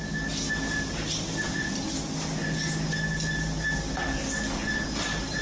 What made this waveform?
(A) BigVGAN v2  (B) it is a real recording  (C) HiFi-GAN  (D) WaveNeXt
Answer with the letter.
B